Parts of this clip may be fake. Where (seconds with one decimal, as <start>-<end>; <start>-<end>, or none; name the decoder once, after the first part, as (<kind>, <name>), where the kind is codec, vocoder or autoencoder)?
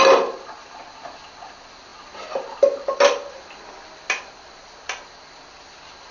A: none